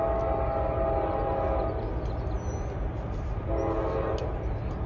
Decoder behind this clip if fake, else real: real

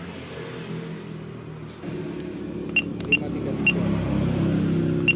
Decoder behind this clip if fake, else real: real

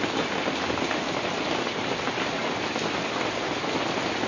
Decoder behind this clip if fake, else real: real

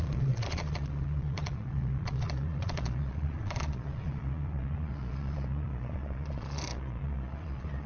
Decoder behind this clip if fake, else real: fake, vocoder, Vocos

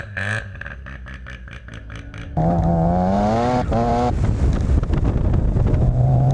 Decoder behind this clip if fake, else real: real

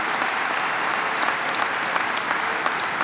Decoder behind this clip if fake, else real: real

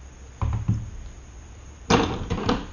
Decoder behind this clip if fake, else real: real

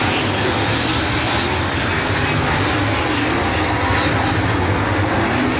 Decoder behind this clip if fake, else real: real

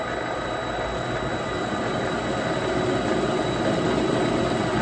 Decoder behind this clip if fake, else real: real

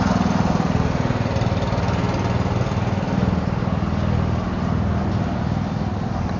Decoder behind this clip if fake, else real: real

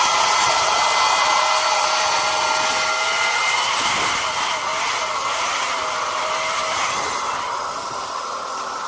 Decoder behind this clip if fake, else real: real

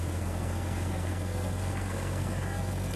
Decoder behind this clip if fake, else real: fake, codec, SNAC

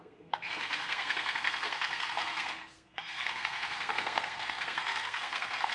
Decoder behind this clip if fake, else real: fake, codec, SNAC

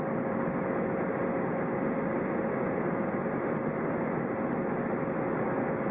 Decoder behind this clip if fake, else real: real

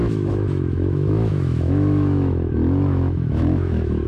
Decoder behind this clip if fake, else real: fake, autoencoder, DAC-VAE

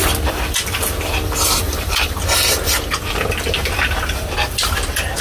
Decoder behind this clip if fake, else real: real